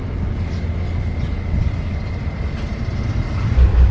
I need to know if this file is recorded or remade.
recorded